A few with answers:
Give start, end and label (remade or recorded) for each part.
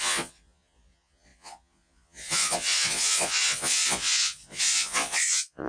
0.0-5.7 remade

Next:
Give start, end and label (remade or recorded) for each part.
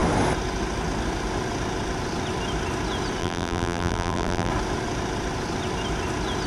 0.0-3.2 recorded; 3.2-4.5 remade; 4.5-6.5 recorded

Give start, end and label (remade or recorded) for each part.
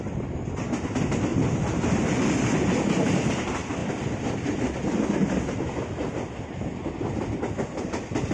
0.0-1.3 recorded; 1.3-2.2 remade; 2.2-3.8 recorded; 3.8-4.5 remade; 4.5-8.3 recorded